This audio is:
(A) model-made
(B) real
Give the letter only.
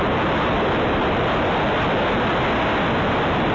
B